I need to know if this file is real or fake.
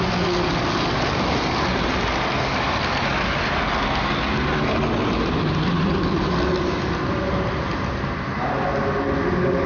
real